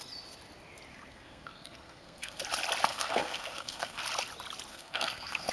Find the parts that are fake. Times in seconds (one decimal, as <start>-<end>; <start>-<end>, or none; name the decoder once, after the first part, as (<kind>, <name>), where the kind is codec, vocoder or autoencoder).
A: 0.9-2.4 (codec, SNAC); 2.9-4.0; 4.7-5.5